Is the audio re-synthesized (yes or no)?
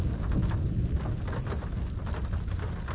no